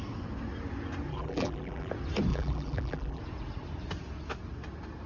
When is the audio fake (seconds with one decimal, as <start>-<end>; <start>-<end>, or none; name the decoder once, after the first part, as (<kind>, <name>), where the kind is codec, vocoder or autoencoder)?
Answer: 1.1-1.9 (vocoder, BigVGAN v2); 2.3-3.2